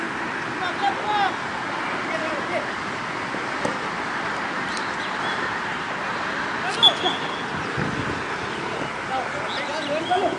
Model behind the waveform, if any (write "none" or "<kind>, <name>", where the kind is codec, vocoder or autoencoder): none